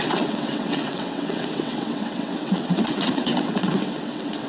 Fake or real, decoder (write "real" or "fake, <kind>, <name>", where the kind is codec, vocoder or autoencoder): fake, vocoder, WaveNeXt